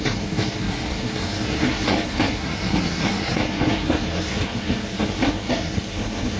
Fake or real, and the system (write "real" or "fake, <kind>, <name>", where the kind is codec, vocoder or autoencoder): fake, codec, SNAC